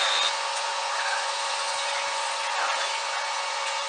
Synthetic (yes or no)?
yes